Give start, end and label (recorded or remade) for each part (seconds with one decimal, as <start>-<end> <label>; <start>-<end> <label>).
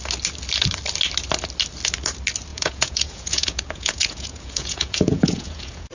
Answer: 0.0-2.5 recorded; 2.5-5.9 remade